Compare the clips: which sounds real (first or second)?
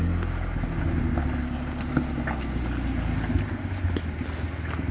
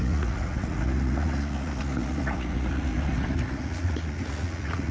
first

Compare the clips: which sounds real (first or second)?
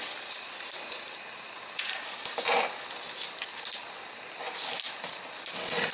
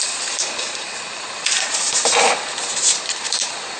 first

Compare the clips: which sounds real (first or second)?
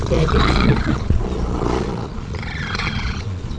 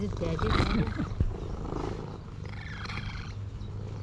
second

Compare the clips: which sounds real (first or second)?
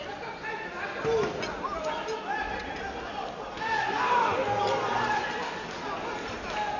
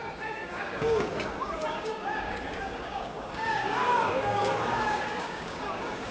first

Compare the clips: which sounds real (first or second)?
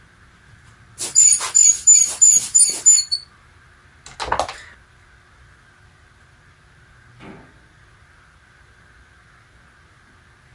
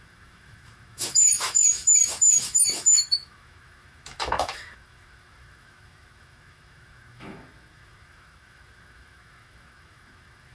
first